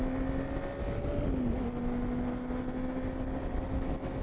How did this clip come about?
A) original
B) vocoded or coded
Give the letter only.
A